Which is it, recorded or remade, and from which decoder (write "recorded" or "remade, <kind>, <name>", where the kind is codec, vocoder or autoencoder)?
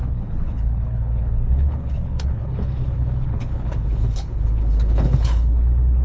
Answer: remade, codec, HILCodec